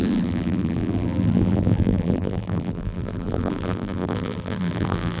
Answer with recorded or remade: remade